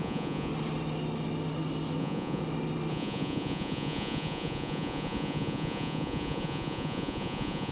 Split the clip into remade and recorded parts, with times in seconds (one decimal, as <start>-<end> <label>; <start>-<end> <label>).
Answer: 0.0-0.5 remade; 0.5-2.0 recorded; 2.0-2.4 remade; 2.4-2.9 recorded; 2.9-7.7 remade